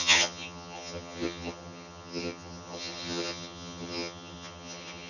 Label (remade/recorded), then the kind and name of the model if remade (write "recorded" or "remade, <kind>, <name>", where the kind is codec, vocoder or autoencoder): remade, vocoder, HiFi-GAN